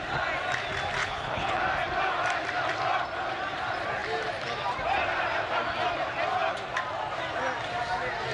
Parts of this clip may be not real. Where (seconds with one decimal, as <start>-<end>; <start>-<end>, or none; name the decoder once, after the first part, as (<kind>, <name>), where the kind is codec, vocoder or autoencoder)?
1.0-1.6 (codec, HILCodec)